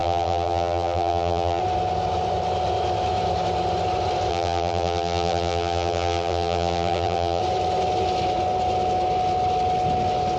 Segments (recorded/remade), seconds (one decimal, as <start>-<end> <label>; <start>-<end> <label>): 0.0-1.6 remade; 1.6-4.3 recorded; 4.3-7.4 remade; 7.4-10.4 recorded